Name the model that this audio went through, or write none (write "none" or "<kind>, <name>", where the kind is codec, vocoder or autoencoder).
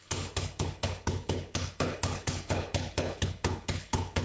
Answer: codec, HILCodec